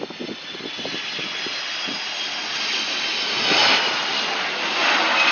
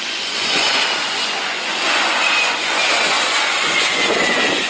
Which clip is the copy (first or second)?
second